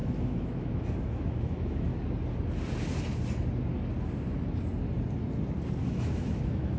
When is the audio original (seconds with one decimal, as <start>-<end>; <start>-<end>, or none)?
1.9-5.8